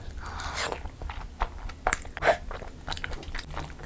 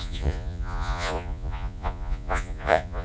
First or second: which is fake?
second